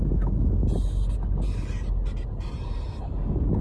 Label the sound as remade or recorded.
recorded